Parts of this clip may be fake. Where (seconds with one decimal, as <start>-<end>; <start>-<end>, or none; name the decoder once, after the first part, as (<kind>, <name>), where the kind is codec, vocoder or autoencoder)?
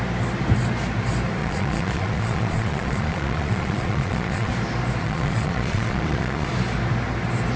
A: 1.4-4.5 (vocoder, Vocos); 5.0-6.5